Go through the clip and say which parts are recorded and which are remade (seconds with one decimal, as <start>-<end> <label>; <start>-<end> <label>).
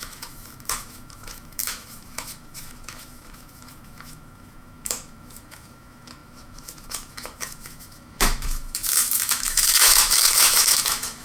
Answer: 0.0-11.2 remade